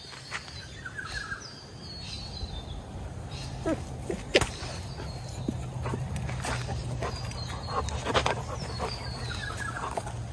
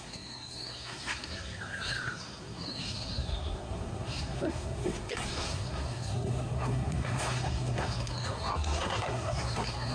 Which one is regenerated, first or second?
second